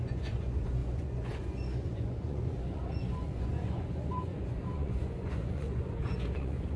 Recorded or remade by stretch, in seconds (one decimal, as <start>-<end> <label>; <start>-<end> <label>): 0.0-6.8 remade